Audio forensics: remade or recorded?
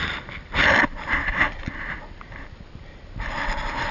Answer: recorded